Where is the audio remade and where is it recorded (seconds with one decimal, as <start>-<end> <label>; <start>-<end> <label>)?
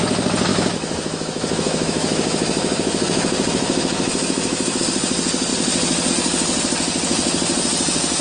0.0-0.5 recorded; 0.5-4.8 remade; 4.8-8.2 recorded